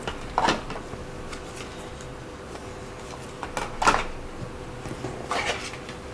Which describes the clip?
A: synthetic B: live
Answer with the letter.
B